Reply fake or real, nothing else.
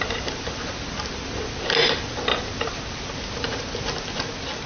real